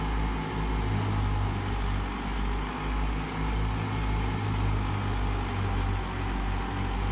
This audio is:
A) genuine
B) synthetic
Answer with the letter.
A